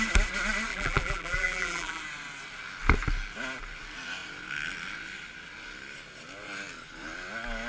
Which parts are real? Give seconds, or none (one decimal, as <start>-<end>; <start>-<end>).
0.0-0.7; 2.0-7.7

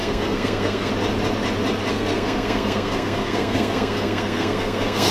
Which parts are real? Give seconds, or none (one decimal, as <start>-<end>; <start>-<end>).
0.9-1.9

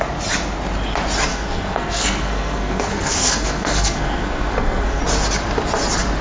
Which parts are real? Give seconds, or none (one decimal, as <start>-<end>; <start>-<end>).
0.0-1.3; 5.0-6.2